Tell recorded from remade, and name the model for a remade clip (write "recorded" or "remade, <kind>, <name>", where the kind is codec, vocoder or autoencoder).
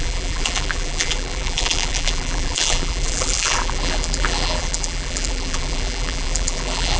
remade, vocoder, BigVGAN v2